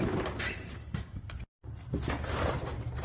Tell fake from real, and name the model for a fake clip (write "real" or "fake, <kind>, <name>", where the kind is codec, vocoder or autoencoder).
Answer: real